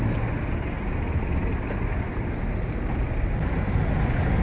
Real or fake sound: real